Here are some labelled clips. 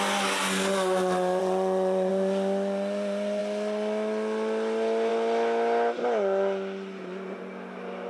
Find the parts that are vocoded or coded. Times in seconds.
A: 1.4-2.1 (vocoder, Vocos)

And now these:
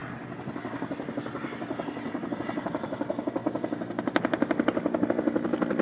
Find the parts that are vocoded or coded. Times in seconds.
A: none